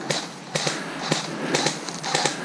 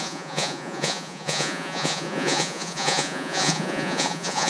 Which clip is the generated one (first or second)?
second